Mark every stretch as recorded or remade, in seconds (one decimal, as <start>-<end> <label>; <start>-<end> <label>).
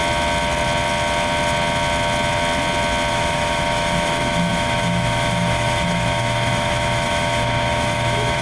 0.0-3.1 recorded; 3.1-8.4 remade